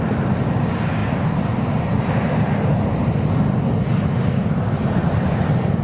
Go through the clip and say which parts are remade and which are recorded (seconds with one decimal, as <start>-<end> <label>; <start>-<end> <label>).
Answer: 0.0-5.8 recorded